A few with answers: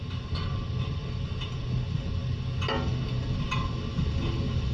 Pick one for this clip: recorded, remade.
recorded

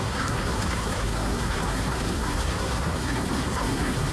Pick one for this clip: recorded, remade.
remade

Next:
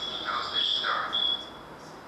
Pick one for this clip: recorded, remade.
recorded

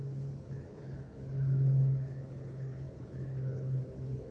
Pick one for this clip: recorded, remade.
remade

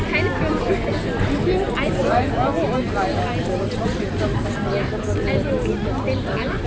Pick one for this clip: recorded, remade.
recorded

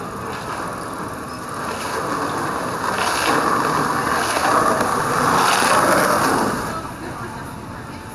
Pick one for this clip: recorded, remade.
recorded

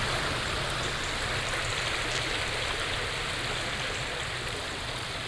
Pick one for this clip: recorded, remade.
recorded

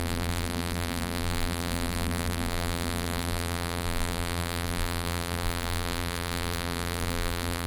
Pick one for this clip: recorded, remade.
remade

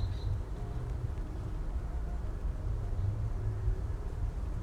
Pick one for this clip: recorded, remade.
remade